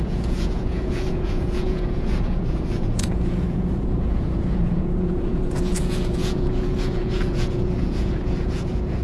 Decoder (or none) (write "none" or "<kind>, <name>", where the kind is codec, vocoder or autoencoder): vocoder, Vocos